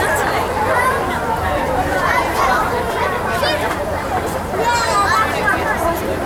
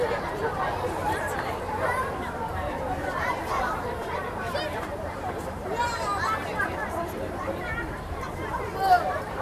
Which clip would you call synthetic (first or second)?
second